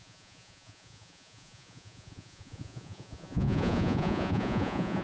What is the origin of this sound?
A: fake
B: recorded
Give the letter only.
A